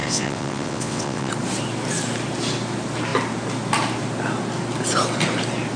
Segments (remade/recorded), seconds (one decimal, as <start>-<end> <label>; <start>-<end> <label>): 0.0-1.3 remade; 1.3-5.8 recorded